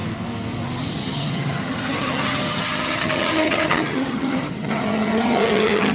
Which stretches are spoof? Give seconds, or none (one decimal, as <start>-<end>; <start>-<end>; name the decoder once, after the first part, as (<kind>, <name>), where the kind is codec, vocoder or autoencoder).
0.9-5.9 (vocoder, HiFi-GAN)

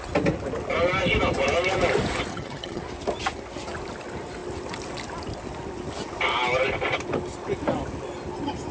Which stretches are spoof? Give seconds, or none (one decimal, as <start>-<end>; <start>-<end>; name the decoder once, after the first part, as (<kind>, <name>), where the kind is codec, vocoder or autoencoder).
2.3-2.8 (vocoder, HiFi-GAN)

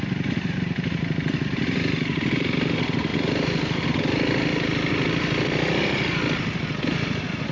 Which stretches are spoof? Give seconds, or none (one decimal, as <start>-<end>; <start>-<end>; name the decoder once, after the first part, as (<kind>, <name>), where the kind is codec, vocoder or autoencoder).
none

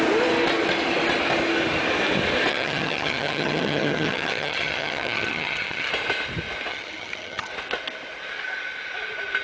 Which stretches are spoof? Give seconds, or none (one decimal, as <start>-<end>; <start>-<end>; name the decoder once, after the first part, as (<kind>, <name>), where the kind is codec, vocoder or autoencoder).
2.5-5.9 (vocoder, HiFi-GAN); 6.7-7.5

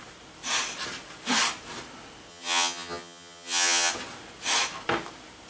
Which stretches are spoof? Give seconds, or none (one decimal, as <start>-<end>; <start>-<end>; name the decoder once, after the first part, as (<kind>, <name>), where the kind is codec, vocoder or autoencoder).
2.3-3.9 (vocoder, HiFi-GAN)

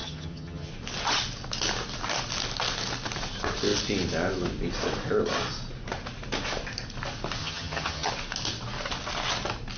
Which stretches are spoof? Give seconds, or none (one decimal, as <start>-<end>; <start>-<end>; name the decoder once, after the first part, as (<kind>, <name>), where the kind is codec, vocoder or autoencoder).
0.0-0.7 (vocoder, HiFi-GAN); 7.4-8.1

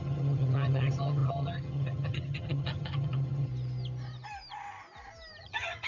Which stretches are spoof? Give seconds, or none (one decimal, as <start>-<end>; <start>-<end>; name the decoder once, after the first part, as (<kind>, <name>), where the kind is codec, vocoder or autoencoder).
0.0-3.5 (vocoder, HiFi-GAN); 5.4-5.9

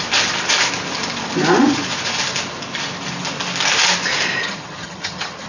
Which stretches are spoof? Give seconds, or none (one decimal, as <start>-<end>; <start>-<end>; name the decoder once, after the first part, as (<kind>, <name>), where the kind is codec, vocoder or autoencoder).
4.4-5.5 (vocoder, HiFi-GAN)